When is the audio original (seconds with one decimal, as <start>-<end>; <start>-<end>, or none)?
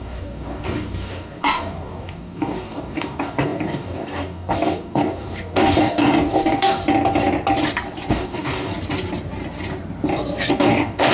6.8-8.1; 8.7-10.5